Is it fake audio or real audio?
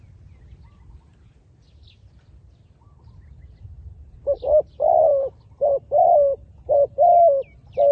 real